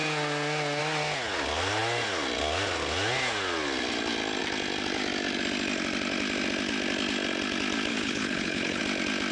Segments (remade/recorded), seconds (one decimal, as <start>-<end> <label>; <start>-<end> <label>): 0.0-7.9 recorded; 7.9-8.8 remade; 8.8-9.3 recorded